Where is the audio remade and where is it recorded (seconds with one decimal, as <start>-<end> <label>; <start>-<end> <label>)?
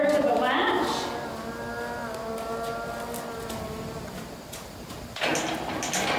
0.0-6.2 recorded